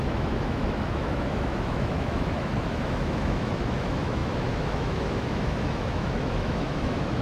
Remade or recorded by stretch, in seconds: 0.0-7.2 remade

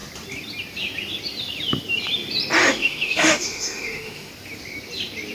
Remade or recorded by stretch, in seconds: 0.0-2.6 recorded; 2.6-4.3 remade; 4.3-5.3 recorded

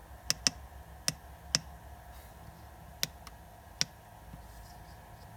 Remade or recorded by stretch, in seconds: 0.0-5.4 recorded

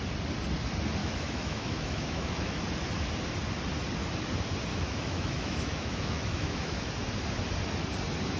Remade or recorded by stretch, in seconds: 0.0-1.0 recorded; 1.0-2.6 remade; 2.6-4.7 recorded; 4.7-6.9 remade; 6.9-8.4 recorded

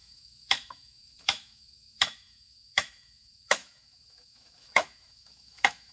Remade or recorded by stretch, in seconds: 0.0-5.9 remade

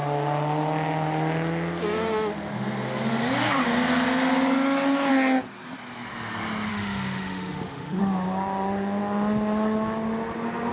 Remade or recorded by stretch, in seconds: 0.0-6.7 recorded; 6.7-8.0 remade; 8.0-10.7 recorded

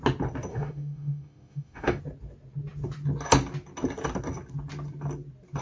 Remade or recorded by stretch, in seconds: 0.0-0.5 recorded; 0.5-2.0 remade; 2.0-5.6 recorded

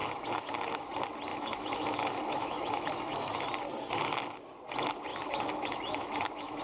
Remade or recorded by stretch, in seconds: 0.0-0.7 remade; 0.7-1.3 recorded; 1.3-3.4 remade; 3.4-5.1 recorded; 5.1-6.6 remade